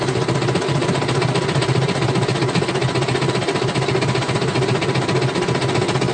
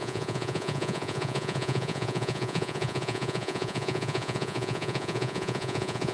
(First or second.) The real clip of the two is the first